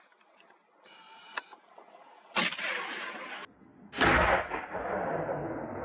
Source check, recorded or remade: recorded